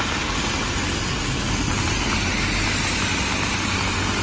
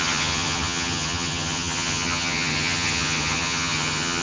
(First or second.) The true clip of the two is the first